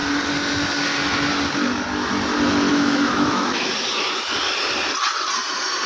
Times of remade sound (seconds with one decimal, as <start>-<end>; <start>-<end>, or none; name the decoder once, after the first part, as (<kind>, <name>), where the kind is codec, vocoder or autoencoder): 2.7-3.7 (autoencoder, DAC-VAE)